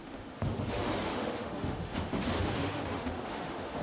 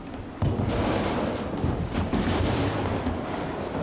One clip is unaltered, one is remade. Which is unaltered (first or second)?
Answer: second